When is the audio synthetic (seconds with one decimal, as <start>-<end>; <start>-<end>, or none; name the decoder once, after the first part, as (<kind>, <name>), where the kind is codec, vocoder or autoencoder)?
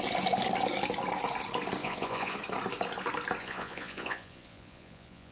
1.8-2.4 (vocoder, Vocos); 3.4-5.3